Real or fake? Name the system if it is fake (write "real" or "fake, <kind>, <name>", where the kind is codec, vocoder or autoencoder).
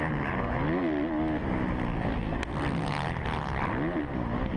real